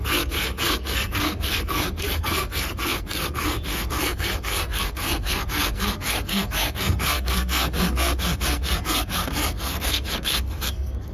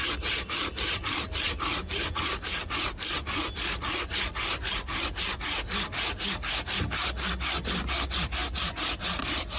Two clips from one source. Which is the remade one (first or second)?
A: first